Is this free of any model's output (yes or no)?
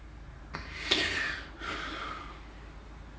yes